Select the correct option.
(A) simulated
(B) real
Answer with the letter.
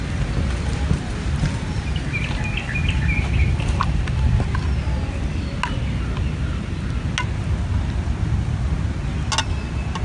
B